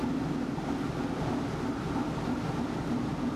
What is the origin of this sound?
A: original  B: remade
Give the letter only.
A